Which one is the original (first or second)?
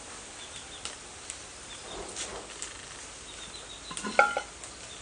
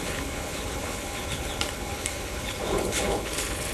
first